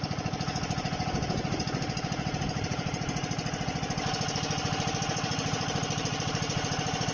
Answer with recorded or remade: remade